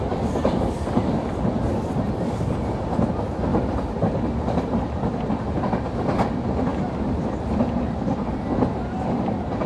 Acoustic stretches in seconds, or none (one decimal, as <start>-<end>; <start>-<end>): 0.0-9.7